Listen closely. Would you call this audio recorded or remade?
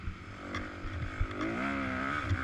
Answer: recorded